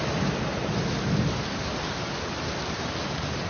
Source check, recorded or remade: recorded